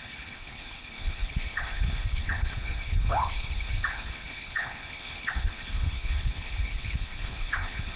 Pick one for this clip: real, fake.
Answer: fake